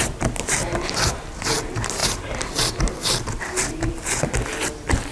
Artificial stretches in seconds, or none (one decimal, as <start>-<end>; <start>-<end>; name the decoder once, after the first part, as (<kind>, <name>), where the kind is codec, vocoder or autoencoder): none